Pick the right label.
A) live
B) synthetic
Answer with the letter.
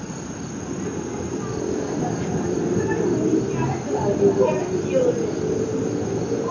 A